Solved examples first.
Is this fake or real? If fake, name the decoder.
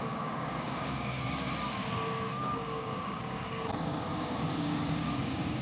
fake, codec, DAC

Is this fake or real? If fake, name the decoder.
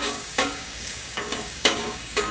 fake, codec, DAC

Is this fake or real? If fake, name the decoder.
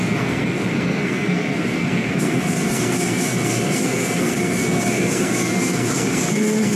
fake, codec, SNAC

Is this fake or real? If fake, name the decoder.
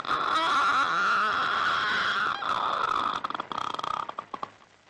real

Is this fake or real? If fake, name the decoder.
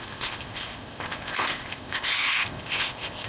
fake, codec, ZipCodec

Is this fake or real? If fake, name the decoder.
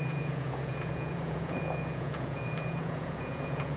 fake, vocoder, Vocos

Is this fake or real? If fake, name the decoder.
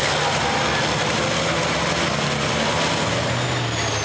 real